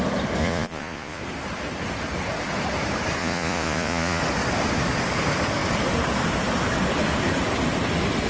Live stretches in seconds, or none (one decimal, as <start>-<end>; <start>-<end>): 0.0-0.4; 1.2-3.2; 4.2-8.3